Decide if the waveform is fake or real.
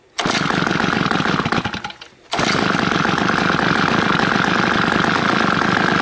real